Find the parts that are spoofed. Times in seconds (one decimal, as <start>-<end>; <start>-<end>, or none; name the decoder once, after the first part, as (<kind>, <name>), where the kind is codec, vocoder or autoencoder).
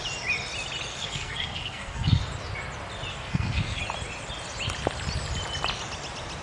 0.9-2.2 (codec, SNAC); 3.1-3.8